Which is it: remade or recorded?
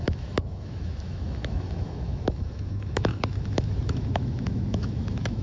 remade